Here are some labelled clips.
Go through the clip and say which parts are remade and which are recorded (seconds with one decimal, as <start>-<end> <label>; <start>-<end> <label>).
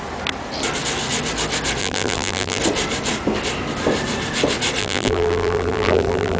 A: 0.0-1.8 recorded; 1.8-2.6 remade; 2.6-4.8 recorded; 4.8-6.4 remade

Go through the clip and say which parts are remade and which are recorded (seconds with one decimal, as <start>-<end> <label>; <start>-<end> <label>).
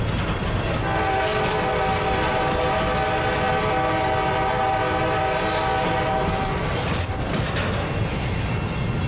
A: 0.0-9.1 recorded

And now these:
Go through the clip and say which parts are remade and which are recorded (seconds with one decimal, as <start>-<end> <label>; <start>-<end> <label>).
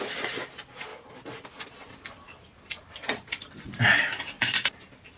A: 0.0-5.2 remade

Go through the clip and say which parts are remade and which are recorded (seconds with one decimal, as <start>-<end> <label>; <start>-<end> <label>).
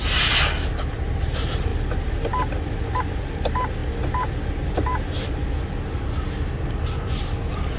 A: 0.0-7.8 recorded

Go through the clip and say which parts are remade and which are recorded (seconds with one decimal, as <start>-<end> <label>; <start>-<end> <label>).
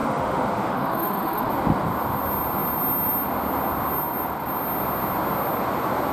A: 0.0-1.5 remade; 1.5-6.1 recorded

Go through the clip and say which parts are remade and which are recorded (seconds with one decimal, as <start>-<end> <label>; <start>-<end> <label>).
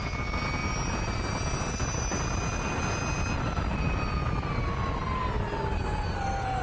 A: 0.0-6.6 recorded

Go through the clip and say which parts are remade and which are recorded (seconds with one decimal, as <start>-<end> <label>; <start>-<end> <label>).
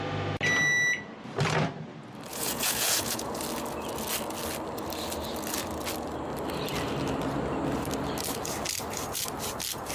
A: 0.0-2.3 recorded; 2.3-3.4 remade; 3.4-9.9 recorded